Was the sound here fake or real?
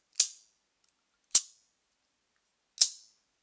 real